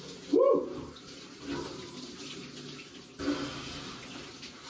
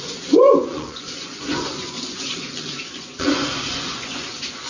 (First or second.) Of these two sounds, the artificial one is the second